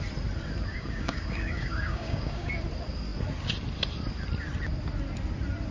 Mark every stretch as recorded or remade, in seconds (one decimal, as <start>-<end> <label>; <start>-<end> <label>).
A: 0.0-0.7 recorded; 0.7-2.5 remade; 2.5-5.7 recorded